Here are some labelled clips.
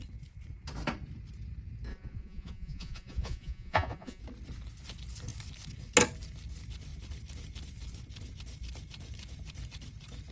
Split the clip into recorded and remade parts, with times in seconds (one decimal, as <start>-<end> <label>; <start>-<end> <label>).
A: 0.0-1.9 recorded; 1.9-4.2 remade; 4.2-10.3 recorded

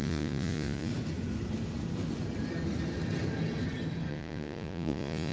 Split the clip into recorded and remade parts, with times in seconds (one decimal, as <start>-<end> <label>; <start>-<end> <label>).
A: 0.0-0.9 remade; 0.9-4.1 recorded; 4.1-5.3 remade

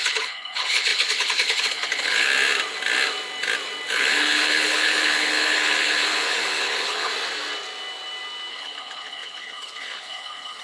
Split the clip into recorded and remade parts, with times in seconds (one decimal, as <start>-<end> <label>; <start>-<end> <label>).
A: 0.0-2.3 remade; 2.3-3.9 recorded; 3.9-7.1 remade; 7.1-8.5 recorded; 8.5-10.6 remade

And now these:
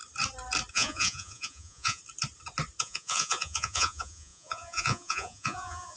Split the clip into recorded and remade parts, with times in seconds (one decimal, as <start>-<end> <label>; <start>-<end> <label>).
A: 0.0-0.7 recorded; 0.7-2.0 remade; 2.0-2.8 recorded; 2.8-6.0 remade

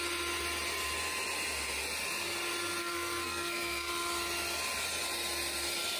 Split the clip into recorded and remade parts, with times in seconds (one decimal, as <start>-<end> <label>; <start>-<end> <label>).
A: 0.0-2.8 recorded; 2.8-3.9 remade; 3.9-6.0 recorded

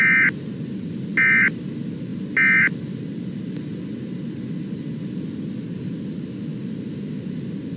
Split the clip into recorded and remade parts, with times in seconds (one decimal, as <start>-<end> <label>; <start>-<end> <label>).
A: 0.0-7.8 recorded

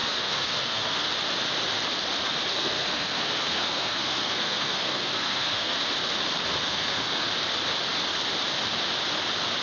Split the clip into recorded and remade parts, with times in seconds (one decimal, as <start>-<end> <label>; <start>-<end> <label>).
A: 0.0-1.1 remade; 1.1-2.5 recorded; 2.5-5.8 remade; 5.8-6.6 recorded; 6.6-7.3 remade; 7.3-9.6 recorded